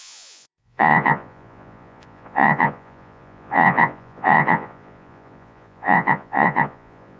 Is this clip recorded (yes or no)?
no